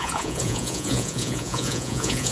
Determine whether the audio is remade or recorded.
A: remade